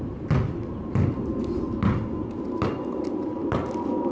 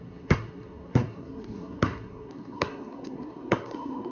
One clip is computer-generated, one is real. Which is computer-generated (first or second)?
second